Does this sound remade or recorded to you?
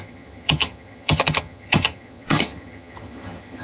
remade